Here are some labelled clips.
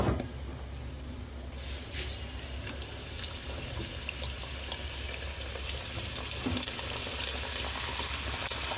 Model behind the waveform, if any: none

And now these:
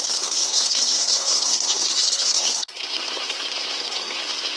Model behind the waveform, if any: codec, SNAC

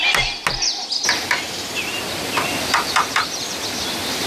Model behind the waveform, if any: none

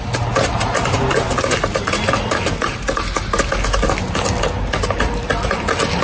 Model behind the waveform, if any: none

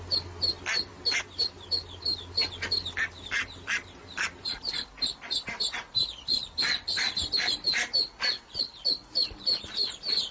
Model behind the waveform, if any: none